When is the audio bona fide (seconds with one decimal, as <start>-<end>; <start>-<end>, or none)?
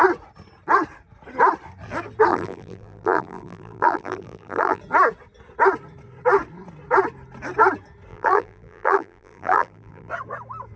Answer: 0.0-2.3; 4.8-8.1; 10.1-10.8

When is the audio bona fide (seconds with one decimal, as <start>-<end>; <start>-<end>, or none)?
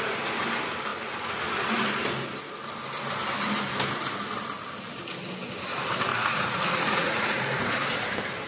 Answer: 0.0-6.1; 7.6-8.5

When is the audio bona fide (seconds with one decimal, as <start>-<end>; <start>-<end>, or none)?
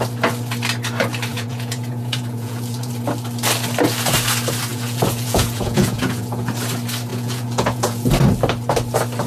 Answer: 0.0-1.3; 2.9-4.7; 6.5-7.1; 8.1-9.3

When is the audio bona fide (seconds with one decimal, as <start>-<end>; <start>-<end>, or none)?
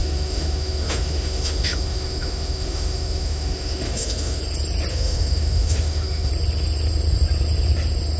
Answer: 4.4-4.9; 6.3-8.2